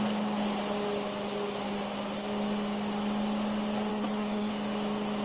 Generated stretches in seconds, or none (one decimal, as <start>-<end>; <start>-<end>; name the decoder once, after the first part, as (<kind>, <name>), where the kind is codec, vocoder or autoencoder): 3.9-4.5 (codec, SNAC)